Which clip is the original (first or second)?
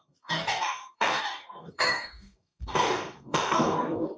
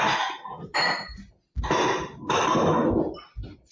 second